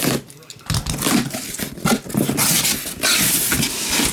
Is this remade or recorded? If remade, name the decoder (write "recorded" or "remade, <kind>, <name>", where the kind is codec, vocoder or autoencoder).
recorded